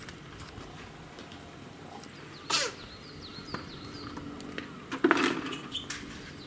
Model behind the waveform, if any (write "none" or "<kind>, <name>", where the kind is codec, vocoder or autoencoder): none